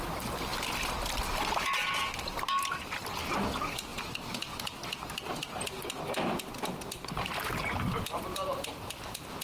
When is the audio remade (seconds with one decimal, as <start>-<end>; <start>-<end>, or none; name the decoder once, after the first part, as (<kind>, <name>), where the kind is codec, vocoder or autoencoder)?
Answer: none